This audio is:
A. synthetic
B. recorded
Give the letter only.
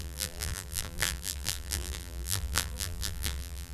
A